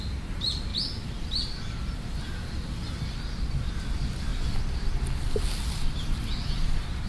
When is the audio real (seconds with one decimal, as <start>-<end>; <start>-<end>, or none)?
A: 0.0-7.1

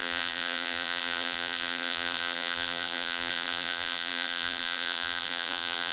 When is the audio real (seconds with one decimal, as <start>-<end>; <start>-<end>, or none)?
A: none

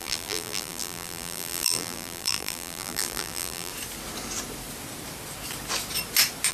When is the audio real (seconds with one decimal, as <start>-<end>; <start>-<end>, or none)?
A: 3.7-6.5

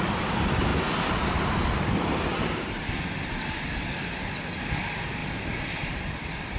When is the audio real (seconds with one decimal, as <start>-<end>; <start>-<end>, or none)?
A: 0.7-1.7; 2.3-4.6; 5.2-5.9

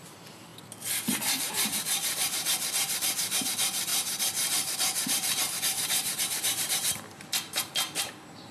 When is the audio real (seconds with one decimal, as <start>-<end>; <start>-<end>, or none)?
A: 0.5-1.4

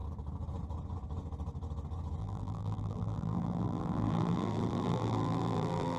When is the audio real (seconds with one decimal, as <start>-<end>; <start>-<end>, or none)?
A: 0.0-2.2